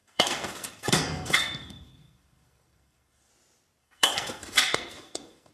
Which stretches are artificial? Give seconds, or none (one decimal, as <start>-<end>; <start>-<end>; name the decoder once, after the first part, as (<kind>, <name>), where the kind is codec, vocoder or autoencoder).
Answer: 0.0-3.3 (codec, SNAC); 3.8-5.5